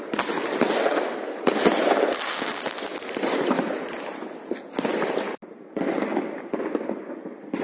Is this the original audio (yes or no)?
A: yes